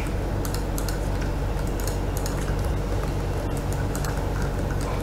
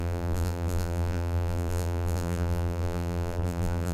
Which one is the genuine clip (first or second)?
first